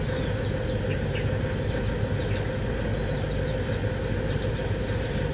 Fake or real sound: real